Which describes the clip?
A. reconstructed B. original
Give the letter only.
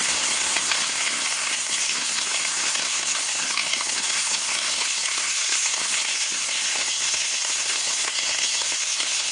A